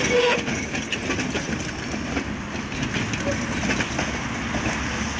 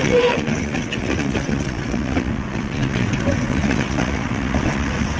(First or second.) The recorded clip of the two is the first